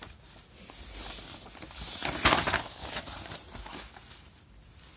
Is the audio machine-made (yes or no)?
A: no